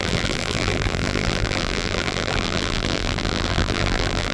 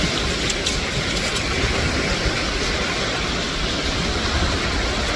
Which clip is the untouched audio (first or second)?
second